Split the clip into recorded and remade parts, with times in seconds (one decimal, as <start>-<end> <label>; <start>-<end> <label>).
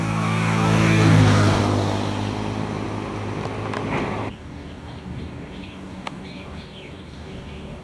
0.0-1.6 remade; 1.6-4.3 recorded; 4.3-7.8 remade